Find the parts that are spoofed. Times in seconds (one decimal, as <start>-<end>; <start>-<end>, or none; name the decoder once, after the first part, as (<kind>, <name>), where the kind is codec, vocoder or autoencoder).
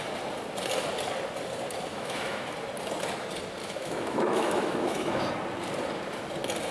1.9-2.5 (autoencoder, DAC-VAE); 3.6-5.2